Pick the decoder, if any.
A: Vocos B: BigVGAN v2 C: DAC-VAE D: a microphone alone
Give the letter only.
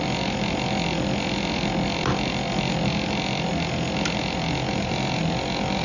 D